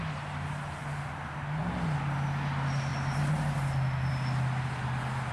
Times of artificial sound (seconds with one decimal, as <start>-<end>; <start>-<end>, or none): none

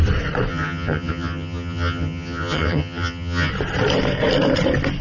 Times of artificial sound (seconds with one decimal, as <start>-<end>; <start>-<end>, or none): 0.5-3.5